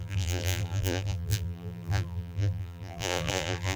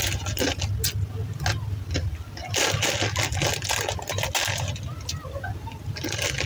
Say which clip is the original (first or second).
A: second